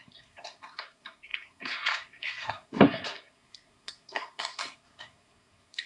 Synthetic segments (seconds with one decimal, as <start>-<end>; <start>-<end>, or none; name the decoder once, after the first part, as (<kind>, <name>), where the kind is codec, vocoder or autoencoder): 0.0-5.9 (codec, SNAC)